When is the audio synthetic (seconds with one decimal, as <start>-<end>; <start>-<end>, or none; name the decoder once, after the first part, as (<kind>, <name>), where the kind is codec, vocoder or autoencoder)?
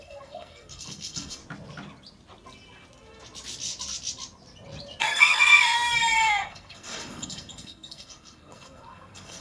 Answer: 0.0-1.4 (codec, SNAC); 5.0-9.4